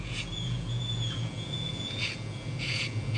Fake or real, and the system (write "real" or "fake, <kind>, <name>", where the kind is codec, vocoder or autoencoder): fake, vocoder, Vocos